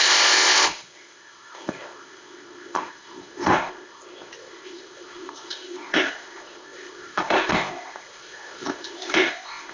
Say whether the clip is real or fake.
fake